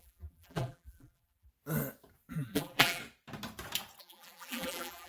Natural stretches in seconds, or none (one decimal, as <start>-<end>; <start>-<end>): 1.5-2.3; 3.0-4.0